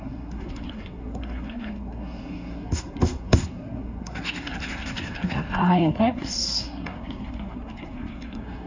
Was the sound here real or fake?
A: fake